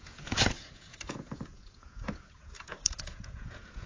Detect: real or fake fake